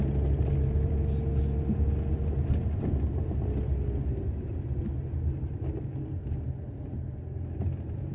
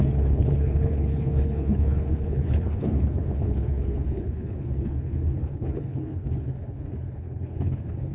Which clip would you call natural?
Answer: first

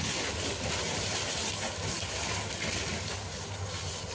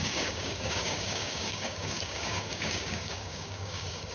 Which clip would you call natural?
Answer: first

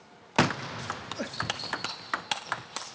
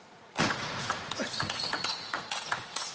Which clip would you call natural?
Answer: first